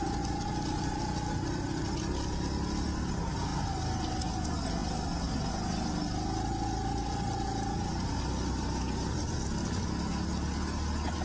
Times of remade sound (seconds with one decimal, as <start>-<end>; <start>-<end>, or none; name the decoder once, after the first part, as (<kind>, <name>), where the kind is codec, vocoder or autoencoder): none